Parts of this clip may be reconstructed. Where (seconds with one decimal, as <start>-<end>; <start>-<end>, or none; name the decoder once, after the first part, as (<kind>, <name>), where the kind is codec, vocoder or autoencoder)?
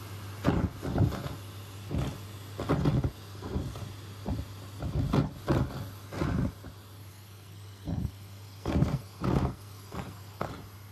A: 3.1-3.8 (codec, SNAC); 7.1-10.5